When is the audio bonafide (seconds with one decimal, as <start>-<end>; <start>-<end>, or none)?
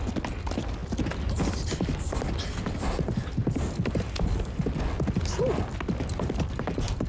0.0-7.1